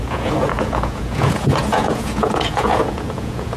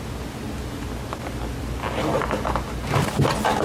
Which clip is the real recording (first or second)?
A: second